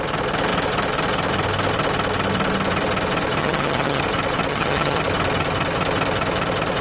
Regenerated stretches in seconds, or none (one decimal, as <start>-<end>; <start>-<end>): 3.4-4.0; 4.5-5.0